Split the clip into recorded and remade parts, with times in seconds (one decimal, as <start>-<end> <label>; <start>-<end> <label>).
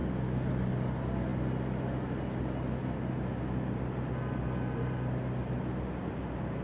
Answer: 0.0-6.6 recorded